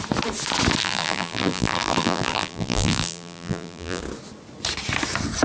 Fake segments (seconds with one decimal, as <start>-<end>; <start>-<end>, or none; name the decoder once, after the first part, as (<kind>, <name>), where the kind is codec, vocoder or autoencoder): 0.8-4.0 (vocoder, BigVGAN v2)